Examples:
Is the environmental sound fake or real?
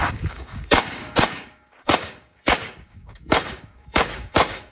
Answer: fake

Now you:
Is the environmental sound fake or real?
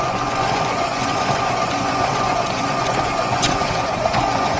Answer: fake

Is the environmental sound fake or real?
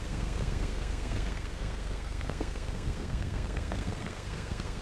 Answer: fake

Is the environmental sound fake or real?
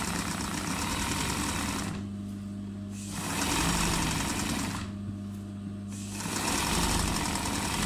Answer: real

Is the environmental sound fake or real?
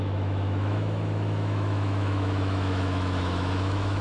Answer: fake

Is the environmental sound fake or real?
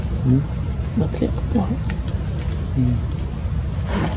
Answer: real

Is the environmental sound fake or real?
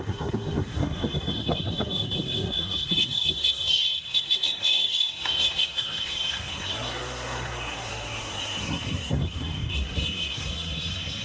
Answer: fake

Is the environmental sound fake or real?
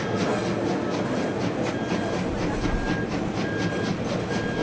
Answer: real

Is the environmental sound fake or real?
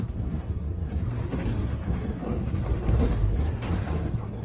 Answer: fake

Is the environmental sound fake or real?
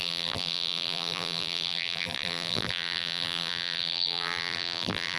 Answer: fake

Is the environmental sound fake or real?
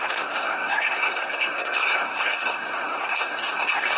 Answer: fake